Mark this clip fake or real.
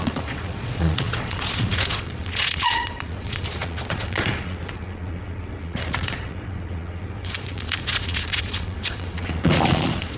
fake